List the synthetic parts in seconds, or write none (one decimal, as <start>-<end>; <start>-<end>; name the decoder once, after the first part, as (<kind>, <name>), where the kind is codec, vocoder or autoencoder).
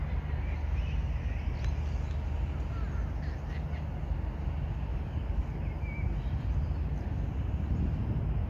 4.9-5.5 (codec, DAC)